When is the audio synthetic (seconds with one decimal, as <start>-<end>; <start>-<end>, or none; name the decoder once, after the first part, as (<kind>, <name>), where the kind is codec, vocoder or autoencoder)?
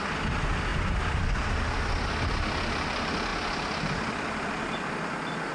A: 0.7-1.9 (vocoder, BigVGAN v2); 3.3-4.5